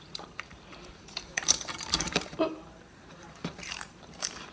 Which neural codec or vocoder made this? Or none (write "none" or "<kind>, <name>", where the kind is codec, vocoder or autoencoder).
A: vocoder, BigVGAN v2